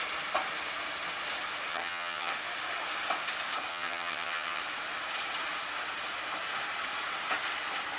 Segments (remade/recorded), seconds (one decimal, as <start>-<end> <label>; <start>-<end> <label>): 0.0-1.7 recorded; 1.7-2.3 remade; 2.3-3.7 recorded; 3.7-4.6 remade; 4.6-8.0 recorded